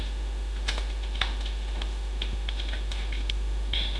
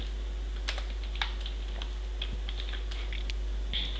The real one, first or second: second